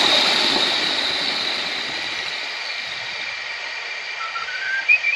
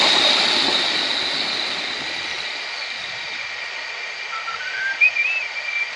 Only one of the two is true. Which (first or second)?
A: second